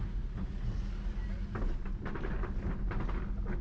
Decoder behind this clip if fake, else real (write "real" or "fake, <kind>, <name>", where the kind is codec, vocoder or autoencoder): real